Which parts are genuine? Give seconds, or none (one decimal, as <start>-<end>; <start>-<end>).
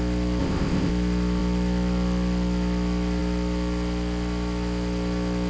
0.0-0.4; 0.9-5.5